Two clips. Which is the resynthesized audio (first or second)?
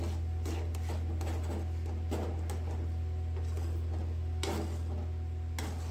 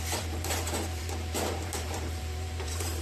second